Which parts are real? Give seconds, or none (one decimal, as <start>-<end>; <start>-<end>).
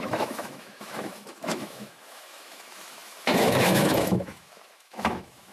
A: none